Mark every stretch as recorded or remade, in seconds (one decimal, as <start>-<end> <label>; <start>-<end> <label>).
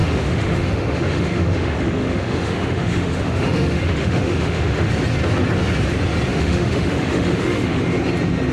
0.0-4.9 remade; 4.9-6.3 recorded; 6.3-7.8 remade; 7.8-8.5 recorded